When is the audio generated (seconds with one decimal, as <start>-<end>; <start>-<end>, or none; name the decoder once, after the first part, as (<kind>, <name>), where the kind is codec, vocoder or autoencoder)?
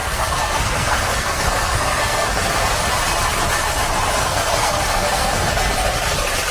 0.0-2.7 (codec, SNAC); 4.2-5.7